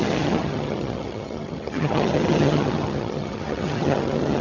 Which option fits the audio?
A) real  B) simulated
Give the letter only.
B